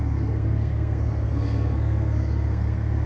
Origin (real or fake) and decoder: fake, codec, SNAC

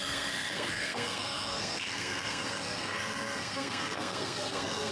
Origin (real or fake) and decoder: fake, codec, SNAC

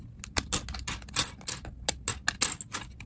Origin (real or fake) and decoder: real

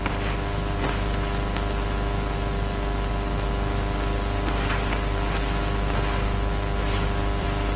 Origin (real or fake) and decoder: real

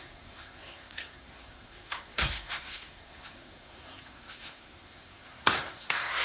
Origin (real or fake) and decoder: fake, codec, SNAC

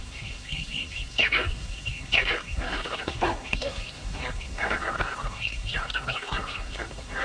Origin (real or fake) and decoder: fake, codec, SNAC